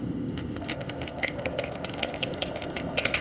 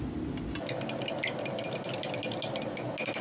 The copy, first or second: first